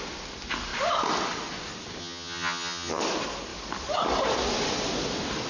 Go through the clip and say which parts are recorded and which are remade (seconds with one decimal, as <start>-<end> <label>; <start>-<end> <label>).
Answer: 0.0-2.0 recorded; 2.0-3.0 remade; 3.0-5.5 recorded